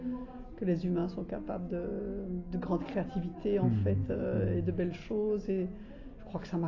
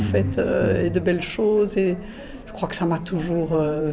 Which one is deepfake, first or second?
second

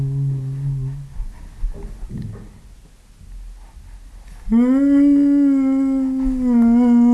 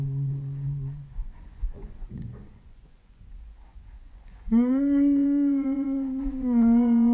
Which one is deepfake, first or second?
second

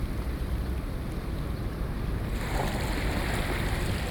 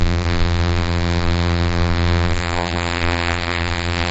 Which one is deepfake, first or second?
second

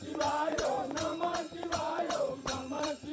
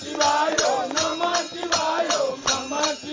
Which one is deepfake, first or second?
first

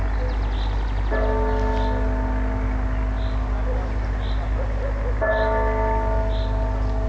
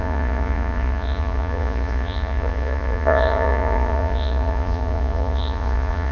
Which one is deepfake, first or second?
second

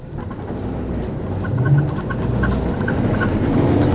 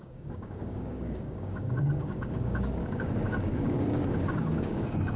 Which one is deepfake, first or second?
second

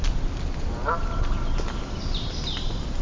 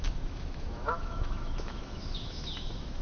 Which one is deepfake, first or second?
second